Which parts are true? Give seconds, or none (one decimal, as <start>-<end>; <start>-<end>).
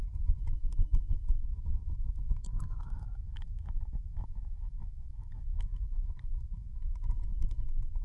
none